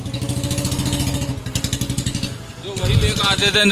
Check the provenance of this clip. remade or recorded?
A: recorded